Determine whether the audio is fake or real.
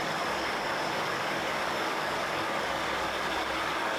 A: fake